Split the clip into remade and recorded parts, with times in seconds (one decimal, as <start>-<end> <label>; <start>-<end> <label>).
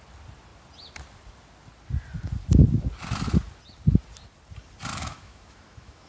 0.0-4.9 recorded; 4.9-6.1 remade